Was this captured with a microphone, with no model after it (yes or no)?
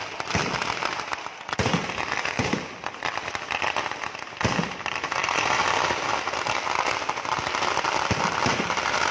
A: yes